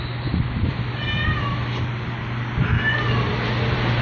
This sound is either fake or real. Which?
real